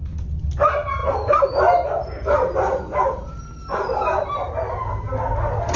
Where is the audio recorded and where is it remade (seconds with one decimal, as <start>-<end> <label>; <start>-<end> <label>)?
0.0-1.0 recorded; 1.0-4.5 remade; 4.5-5.8 recorded